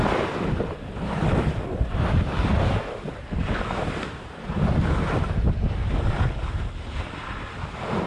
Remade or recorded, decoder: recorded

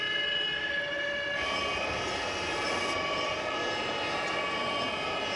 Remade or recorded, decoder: recorded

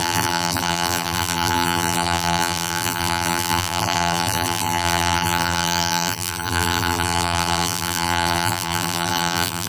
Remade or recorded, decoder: remade, vocoder, BigVGAN v2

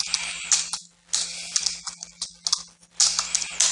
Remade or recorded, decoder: recorded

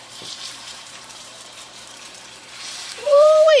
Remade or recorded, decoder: remade, vocoder, BigVGAN v2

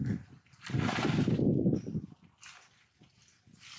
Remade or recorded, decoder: recorded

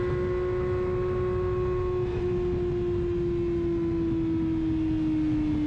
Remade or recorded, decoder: recorded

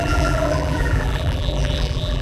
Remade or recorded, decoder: remade, vocoder, BigVGAN v2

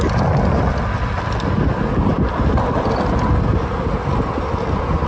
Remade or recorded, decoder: recorded